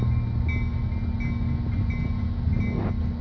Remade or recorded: recorded